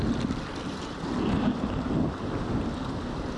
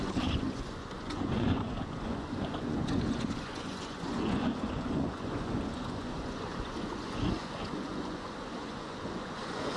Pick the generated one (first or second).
second